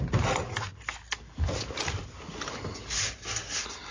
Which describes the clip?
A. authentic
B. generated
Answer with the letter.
A